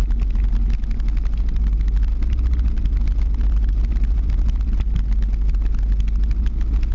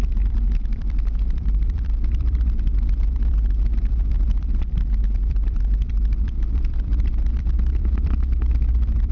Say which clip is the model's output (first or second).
second